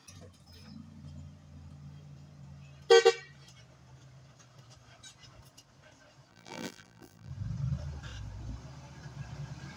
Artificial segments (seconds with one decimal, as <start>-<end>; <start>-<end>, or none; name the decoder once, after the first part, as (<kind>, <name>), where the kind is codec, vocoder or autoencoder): 6.3-7.3 (vocoder, BigVGAN v2)